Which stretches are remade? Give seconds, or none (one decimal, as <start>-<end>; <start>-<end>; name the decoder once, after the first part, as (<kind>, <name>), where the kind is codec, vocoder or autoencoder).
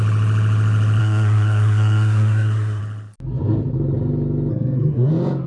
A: 1.0-2.8 (codec, SNAC); 4.5-5.1